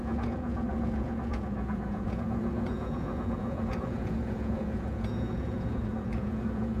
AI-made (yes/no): yes